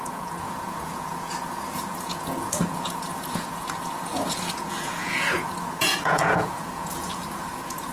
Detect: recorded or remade remade